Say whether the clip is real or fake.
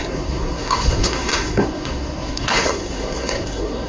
fake